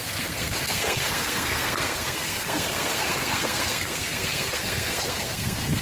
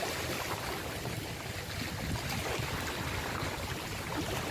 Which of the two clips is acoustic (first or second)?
second